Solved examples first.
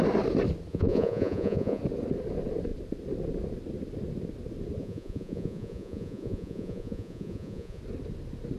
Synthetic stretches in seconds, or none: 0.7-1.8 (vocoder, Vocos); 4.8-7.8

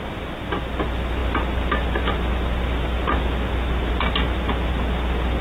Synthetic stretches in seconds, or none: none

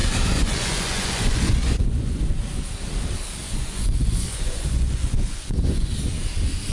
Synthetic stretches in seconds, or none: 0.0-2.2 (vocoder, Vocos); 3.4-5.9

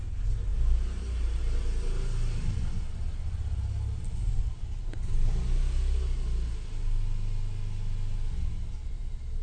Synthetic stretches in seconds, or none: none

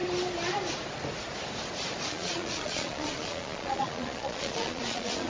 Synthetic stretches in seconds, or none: 2.1-5.3 (vocoder, Vocos)